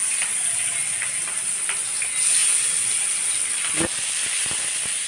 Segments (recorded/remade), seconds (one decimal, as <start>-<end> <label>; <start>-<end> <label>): 0.0-0.8 recorded; 0.8-1.4 remade; 1.4-5.1 recorded